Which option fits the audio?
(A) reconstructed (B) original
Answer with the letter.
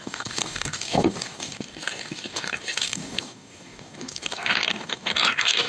A